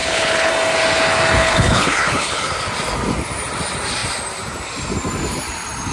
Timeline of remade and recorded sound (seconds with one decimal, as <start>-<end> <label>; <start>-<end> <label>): 0.0-0.5 remade; 0.5-1.4 recorded; 1.4-2.5 remade; 2.5-5.9 recorded